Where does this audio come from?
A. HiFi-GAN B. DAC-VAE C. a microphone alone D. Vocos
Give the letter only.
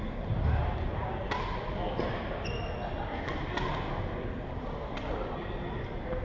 C